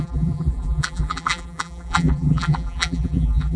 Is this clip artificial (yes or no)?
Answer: yes